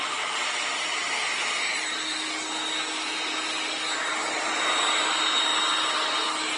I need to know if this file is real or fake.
real